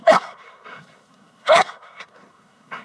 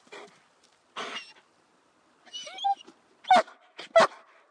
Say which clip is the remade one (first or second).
first